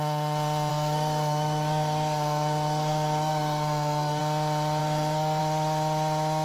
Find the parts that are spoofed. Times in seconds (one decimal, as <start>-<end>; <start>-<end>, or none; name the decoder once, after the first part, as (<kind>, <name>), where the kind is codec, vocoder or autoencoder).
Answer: 0.7-4.2 (codec, SNAC); 4.8-5.4

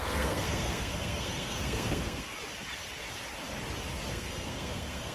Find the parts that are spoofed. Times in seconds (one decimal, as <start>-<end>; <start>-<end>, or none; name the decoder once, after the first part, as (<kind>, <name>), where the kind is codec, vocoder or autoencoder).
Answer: 0.0-2.4 (codec, SNAC); 4.1-5.1

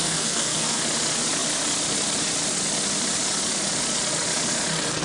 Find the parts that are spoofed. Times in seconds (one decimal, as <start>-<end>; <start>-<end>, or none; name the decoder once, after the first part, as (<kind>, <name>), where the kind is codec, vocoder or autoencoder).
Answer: 0.0-0.8 (codec, SNAC)

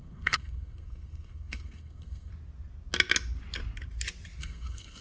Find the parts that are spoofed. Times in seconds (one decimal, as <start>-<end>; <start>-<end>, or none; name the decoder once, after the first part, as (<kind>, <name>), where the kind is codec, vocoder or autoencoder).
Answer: 0.0-2.3 (codec, SNAC); 4.4-5.0